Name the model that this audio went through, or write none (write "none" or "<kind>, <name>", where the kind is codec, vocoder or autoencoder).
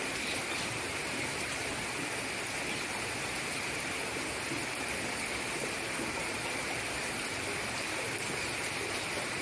none